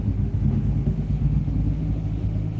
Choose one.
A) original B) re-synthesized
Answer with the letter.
B